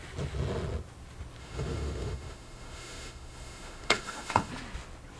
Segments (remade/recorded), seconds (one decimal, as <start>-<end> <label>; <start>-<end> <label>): 0.0-1.4 recorded; 1.4-4.5 remade; 4.5-5.2 recorded